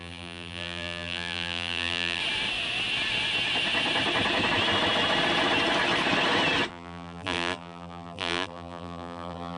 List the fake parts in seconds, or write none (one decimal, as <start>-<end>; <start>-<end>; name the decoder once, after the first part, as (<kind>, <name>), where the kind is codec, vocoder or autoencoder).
0.0-2.2 (vocoder, BigVGAN v2); 6.7-9.6